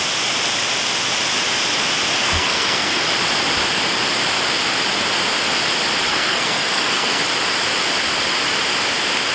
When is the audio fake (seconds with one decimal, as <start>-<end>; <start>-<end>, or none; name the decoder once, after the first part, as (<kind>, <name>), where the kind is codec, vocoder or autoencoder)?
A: 2.2-3.1 (codec, SNAC); 6.1-7.2